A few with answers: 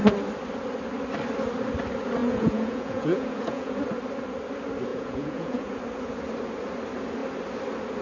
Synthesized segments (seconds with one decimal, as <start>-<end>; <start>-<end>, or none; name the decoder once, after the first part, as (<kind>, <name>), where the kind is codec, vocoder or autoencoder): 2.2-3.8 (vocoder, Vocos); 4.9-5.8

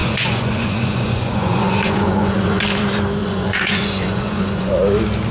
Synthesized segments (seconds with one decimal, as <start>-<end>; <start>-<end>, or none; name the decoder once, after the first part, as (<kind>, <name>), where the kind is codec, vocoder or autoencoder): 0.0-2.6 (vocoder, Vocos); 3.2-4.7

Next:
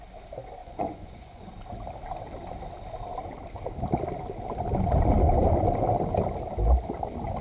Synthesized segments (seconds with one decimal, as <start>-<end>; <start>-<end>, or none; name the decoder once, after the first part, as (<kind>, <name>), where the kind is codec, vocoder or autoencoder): 0.6-1.5 (vocoder, Vocos)

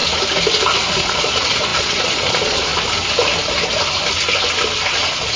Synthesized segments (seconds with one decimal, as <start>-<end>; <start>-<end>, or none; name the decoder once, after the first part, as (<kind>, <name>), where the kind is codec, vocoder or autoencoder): 0.9-2.7 (vocoder, Vocos); 4.9-5.4

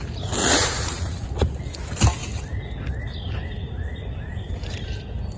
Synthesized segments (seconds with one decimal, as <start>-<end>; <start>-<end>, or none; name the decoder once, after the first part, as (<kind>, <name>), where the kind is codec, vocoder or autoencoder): 0.4-1.6 (vocoder, Vocos)

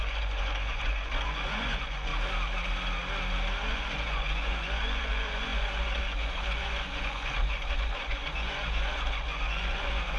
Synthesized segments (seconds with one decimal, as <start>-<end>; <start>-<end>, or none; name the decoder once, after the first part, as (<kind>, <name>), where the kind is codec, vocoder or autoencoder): 0.0-2.1 (vocoder, Vocos); 3.7-10.2

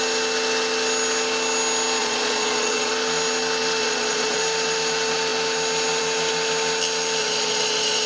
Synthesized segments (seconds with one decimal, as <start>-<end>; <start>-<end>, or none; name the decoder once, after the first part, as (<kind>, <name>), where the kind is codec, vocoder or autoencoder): 2.0-2.9 (vocoder, Vocos); 3.8-4.4; 7.2-8.1